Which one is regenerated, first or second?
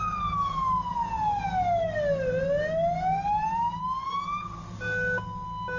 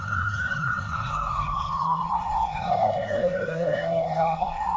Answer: second